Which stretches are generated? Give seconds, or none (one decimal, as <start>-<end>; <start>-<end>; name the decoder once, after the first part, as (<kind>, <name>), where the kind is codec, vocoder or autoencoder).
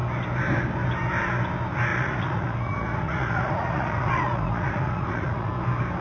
1.9-5.5 (vocoder, Vocos)